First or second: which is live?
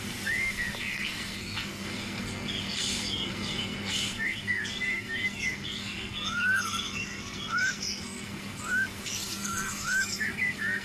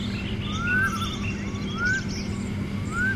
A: second